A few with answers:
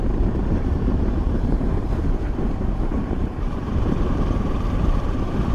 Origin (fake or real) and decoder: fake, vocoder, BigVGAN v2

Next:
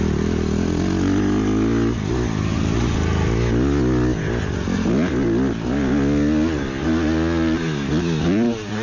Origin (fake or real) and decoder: real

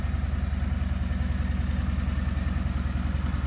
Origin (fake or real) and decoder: real